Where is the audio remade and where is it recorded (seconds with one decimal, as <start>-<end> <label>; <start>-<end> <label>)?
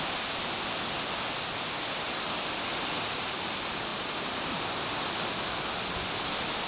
0.0-6.7 recorded